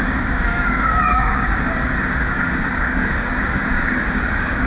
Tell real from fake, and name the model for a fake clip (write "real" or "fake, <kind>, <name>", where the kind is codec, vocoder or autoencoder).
fake, codec, DAC